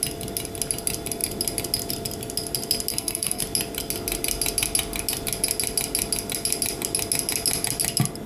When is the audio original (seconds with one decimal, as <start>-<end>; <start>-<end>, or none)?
0.0-2.9; 3.4-8.3